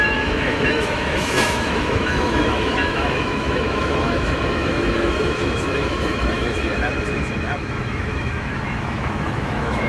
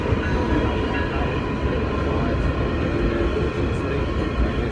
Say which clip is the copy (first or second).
first